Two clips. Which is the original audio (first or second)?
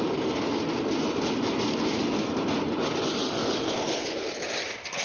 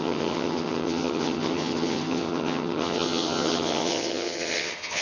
first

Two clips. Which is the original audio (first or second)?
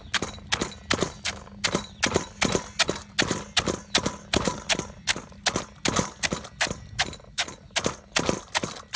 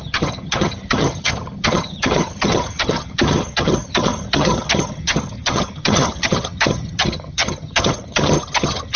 first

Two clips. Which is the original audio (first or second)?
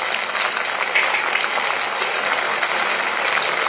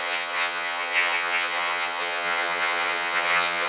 first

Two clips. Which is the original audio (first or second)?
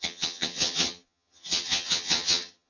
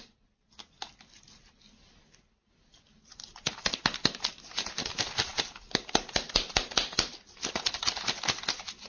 second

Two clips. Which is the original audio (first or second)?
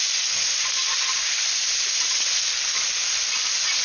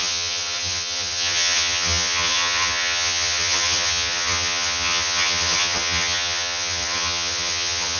first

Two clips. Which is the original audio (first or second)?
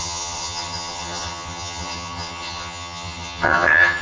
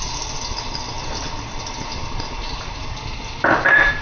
second